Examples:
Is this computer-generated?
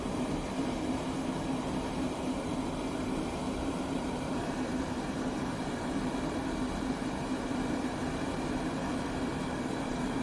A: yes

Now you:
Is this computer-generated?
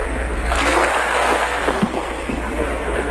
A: yes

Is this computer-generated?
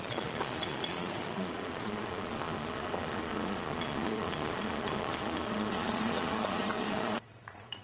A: yes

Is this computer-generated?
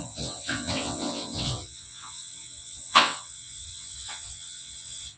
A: yes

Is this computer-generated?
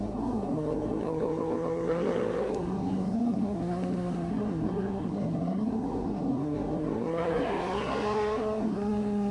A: yes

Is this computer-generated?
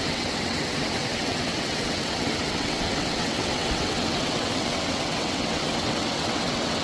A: yes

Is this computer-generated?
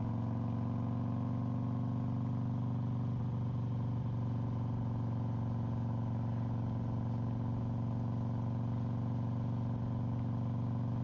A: no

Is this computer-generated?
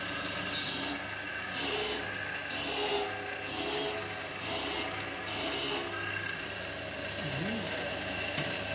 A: no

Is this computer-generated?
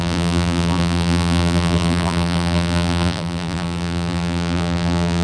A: yes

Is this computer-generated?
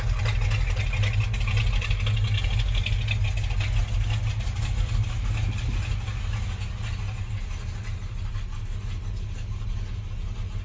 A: no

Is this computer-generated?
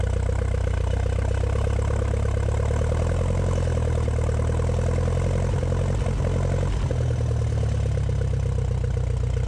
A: no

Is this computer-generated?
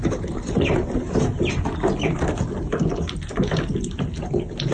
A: no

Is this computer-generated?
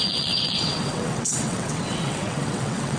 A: yes